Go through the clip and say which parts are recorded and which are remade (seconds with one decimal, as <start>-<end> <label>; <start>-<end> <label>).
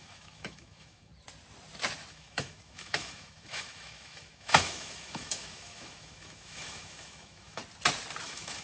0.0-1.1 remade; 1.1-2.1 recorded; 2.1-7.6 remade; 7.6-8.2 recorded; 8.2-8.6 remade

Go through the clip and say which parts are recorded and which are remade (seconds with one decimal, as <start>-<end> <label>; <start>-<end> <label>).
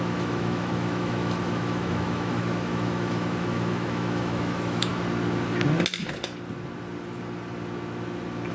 0.0-4.9 remade; 4.9-8.5 recorded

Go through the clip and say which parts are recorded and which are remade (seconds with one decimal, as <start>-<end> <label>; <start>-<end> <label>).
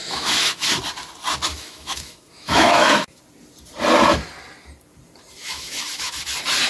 0.0-0.7 remade; 0.7-1.5 recorded; 1.5-3.2 remade; 3.2-5.4 recorded; 5.4-6.2 remade; 6.2-6.7 recorded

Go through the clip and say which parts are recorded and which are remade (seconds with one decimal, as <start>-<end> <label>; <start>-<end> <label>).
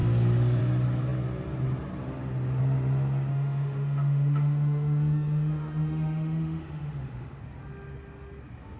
0.0-3.3 recorded; 3.3-7.4 remade; 7.4-8.8 recorded